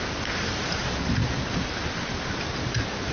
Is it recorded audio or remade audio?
recorded